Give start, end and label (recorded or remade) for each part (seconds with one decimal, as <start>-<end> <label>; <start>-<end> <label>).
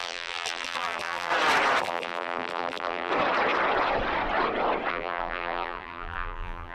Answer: 0.0-1.3 remade; 1.3-1.8 recorded; 1.8-3.1 remade; 3.1-4.9 recorded; 4.9-6.7 remade